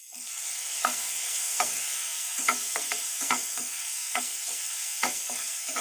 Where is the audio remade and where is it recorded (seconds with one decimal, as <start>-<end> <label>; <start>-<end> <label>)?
0.0-5.8 remade